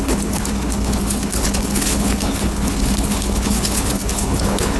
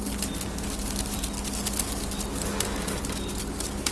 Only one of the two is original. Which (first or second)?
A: second